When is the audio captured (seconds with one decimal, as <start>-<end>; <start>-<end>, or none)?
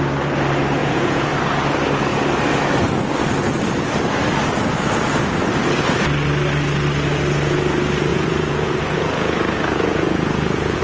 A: 0.0-0.8; 1.3-8.1